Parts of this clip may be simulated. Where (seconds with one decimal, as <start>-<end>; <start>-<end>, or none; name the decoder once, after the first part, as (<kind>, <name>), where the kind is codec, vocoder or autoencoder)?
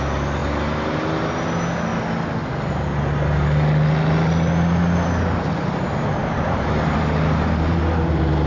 6.2-7.8 (vocoder, BigVGAN v2)